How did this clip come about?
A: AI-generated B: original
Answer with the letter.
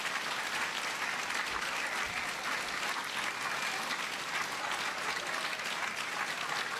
B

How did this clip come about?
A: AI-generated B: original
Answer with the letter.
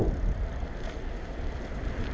B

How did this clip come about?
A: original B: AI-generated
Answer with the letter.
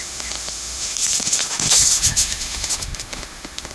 B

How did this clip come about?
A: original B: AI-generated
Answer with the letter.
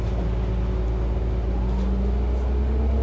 A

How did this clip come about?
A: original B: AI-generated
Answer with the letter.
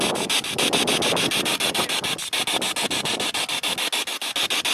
A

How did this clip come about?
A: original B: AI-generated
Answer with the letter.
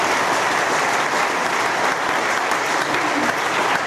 A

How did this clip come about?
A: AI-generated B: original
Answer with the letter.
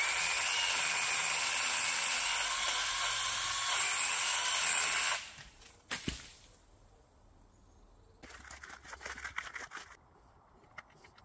B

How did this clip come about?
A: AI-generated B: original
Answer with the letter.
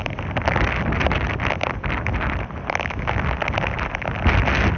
B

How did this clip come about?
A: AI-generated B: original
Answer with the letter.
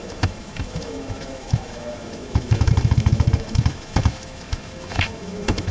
A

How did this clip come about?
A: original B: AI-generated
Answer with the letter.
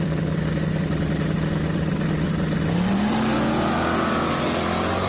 A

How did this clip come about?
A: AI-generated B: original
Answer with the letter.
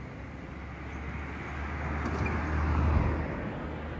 B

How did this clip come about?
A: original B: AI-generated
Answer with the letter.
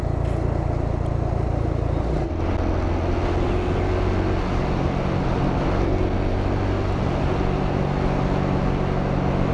A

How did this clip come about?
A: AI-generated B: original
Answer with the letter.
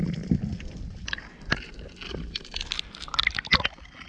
B